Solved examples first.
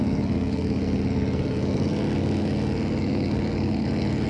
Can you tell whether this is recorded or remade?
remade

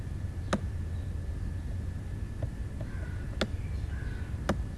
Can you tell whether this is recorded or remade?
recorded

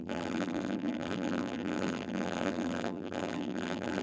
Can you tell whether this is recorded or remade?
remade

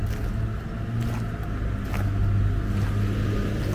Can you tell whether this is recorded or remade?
recorded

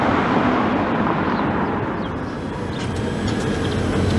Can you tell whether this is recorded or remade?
recorded